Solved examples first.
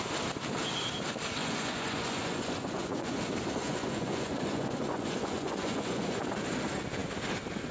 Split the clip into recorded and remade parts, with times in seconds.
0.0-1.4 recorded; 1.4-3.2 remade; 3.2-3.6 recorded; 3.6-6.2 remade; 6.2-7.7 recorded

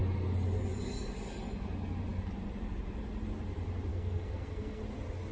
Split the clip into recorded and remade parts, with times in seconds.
0.0-3.9 recorded; 3.9-4.8 remade; 4.8-5.3 recorded

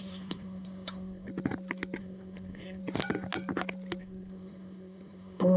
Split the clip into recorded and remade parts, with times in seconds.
0.0-1.3 remade; 1.3-2.0 recorded; 2.0-2.8 remade; 2.8-4.0 recorded; 4.0-5.6 remade

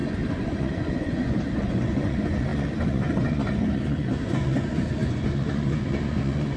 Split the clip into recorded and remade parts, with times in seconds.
0.0-6.6 remade

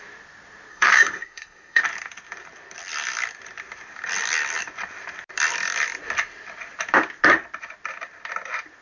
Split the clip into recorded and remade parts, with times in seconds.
0.0-0.7 recorded; 0.7-1.8 remade; 1.8-8.8 recorded

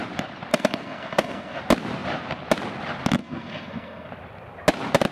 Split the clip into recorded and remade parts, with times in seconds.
0.0-0.5 recorded; 0.5-1.6 remade; 1.6-3.2 recorded; 3.2-4.1 remade; 4.1-5.1 recorded

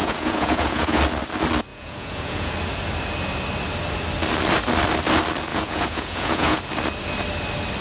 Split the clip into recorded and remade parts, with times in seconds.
0.0-1.0 remade; 1.0-1.7 recorded; 1.7-2.5 remade; 2.5-5.5 recorded; 5.5-6.6 remade; 6.6-7.8 recorded